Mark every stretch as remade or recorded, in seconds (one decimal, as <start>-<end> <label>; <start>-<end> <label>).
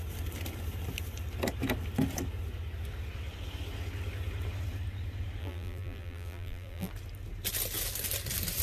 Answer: 0.0-5.4 recorded; 5.4-6.9 remade; 6.9-8.6 recorded